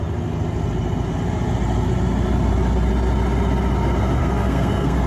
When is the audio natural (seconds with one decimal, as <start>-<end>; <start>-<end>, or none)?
0.0-4.2